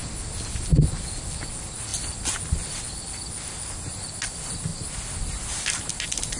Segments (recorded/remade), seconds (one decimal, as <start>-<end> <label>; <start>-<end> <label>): 0.0-6.4 recorded